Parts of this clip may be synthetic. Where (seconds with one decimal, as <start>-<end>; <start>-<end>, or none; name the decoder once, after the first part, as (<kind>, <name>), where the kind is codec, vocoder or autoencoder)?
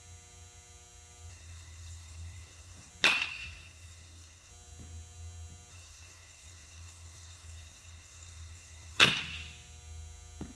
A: 1.3-2.9 (codec, SNAC); 3.3-4.5; 5.7-9.1